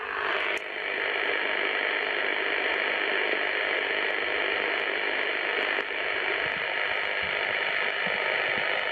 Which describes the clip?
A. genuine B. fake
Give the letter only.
A